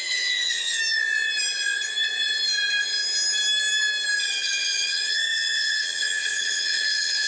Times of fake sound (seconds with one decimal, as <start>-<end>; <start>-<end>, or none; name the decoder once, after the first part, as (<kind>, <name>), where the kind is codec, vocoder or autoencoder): 0.0-0.8 (vocoder, HiFi-GAN); 4.2-7.3